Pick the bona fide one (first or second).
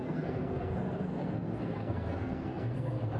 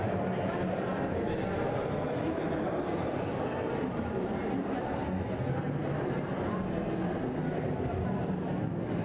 second